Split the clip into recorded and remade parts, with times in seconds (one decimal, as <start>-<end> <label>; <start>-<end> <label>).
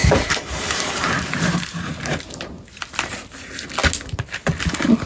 0.0-3.1 remade; 3.1-5.1 recorded